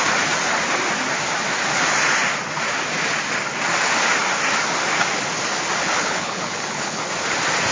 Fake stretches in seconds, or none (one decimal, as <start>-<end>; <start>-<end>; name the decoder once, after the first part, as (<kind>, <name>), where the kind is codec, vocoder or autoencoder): 5.8-7.0 (codec, HILCodec)